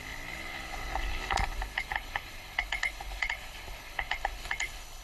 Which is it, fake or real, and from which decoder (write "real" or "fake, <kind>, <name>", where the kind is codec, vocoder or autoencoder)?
fake, codec, HILCodec